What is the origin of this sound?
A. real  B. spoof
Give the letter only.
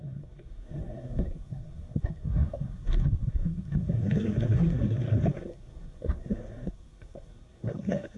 B